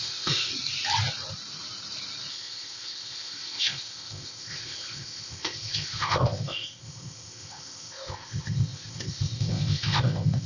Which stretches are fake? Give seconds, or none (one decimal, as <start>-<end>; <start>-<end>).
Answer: 0.0-0.5; 2.3-10.5